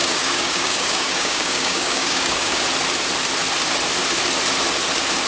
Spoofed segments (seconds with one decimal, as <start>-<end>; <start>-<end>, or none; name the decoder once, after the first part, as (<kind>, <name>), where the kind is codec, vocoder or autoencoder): 0.0-2.6 (codec, DAC)